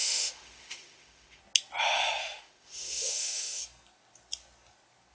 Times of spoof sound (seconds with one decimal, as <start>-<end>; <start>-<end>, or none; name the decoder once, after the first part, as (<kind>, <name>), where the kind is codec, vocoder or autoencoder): 0.0-1.4 (autoencoder, DAC-VAE); 2.2-3.6